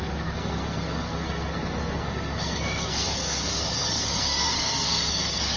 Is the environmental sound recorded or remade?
remade